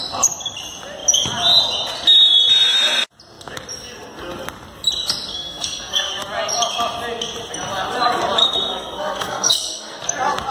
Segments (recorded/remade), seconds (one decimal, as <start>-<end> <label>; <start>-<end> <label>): 0.0-5.3 recorded; 5.3-6.1 remade; 6.1-8.4 recorded; 8.4-10.0 remade; 10.0-10.5 recorded